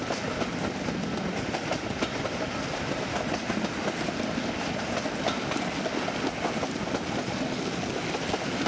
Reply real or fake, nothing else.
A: real